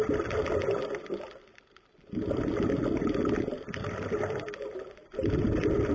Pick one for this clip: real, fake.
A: real